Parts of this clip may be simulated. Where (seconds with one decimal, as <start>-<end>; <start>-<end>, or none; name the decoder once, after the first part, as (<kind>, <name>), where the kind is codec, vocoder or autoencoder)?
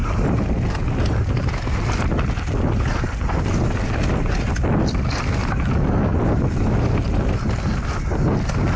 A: none